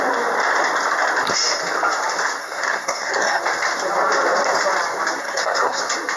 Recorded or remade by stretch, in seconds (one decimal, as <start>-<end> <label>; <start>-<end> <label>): 0.0-2.4 recorded; 2.4-3.4 remade; 3.4-5.2 recorded; 5.2-5.8 remade; 5.8-6.2 recorded